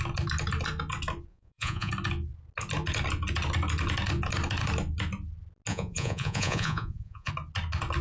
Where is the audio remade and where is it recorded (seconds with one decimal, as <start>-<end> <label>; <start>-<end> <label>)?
0.0-1.3 recorded; 1.3-1.9 remade; 1.9-5.7 recorded; 5.7-7.3 remade; 7.3-8.0 recorded